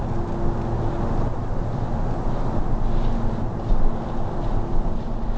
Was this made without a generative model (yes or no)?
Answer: yes